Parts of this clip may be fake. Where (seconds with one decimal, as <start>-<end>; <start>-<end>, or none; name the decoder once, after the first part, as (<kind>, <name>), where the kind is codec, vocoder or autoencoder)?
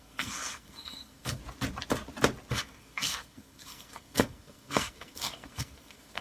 0.0-1.4 (codec, SNAC); 2.5-6.2